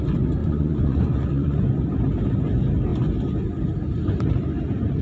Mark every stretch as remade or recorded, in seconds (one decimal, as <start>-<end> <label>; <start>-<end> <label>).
0.0-0.4 recorded; 0.4-1.8 remade; 1.8-5.0 recorded